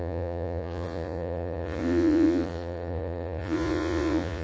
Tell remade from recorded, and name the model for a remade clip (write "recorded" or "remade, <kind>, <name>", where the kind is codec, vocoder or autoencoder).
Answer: remade, vocoder, Vocos